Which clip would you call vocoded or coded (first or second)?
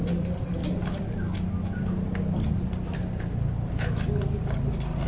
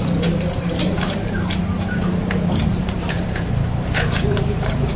second